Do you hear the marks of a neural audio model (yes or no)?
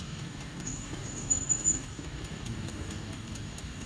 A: yes